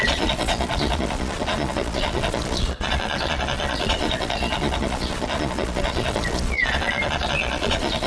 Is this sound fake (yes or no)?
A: yes